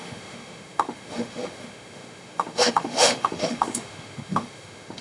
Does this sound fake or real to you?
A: fake